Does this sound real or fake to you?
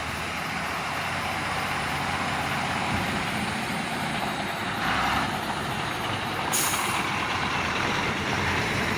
fake